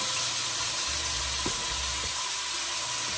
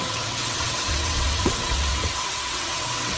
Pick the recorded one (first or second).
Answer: first